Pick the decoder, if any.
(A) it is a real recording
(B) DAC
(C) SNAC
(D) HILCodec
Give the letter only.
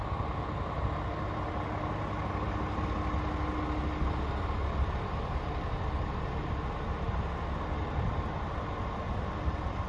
A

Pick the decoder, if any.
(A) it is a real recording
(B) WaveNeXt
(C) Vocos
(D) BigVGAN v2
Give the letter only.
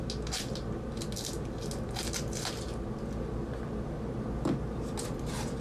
A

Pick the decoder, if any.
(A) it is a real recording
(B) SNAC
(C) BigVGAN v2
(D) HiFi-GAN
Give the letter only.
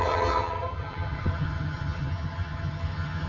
D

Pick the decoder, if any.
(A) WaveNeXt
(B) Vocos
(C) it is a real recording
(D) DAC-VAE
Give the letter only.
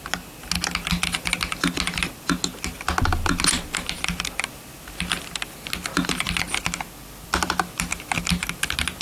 C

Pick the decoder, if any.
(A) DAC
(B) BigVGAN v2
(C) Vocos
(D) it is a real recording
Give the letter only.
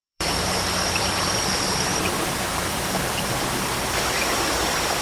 B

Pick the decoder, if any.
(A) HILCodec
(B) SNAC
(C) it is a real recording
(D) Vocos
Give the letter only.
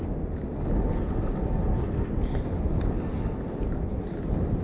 C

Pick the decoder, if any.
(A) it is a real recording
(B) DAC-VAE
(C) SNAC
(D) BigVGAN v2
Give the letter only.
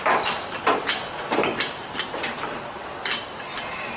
A